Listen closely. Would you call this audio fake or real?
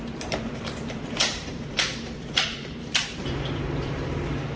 fake